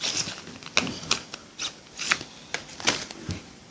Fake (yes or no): no